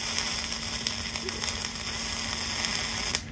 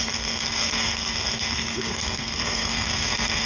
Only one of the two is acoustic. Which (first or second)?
first